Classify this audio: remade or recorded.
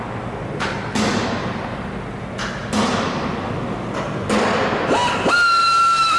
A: recorded